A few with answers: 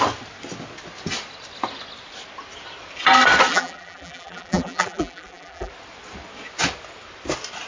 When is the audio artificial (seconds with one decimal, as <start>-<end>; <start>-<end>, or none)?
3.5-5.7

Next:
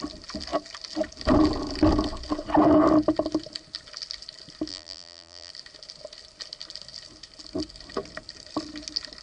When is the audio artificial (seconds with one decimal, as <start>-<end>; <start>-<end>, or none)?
4.7-5.5

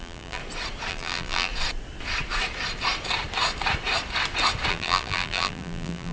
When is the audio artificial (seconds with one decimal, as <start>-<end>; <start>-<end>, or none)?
0.0-0.4; 0.9-1.5; 4.7-6.1

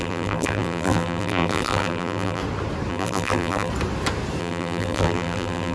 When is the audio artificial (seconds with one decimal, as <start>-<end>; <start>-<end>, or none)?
0.0-2.4; 2.9-3.7; 4.4-5.7